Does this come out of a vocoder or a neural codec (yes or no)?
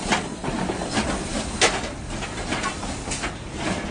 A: no